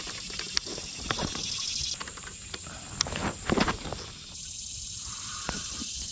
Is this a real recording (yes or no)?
yes